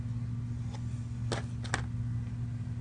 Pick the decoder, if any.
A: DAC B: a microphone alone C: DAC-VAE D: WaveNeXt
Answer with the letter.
B